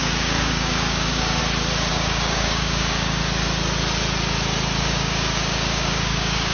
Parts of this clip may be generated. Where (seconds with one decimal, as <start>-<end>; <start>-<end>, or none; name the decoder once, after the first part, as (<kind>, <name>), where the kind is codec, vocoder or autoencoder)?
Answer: 0.0-1.4 (codec, DAC); 1.9-3.2; 4.8-6.5